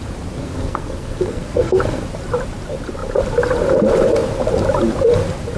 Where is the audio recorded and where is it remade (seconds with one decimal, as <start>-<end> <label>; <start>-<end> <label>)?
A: 0.0-0.4 recorded; 0.4-2.0 remade; 2.0-5.6 recorded